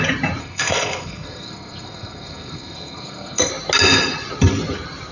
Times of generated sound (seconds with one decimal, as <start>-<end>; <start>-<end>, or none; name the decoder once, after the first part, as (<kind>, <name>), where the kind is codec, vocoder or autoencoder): 0.4-3.5 (codec, SNAC)